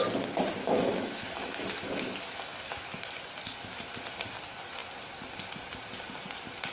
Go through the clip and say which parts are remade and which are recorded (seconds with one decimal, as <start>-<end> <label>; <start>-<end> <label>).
0.0-0.6 recorded; 0.6-3.2 remade; 3.2-6.7 recorded